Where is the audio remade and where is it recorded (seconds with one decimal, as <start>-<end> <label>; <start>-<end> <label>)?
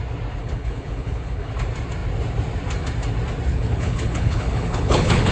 0.0-0.4 recorded; 0.4-1.5 remade; 1.5-3.5 recorded; 3.5-5.3 remade